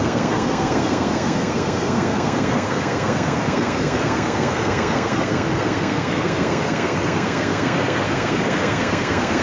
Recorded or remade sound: remade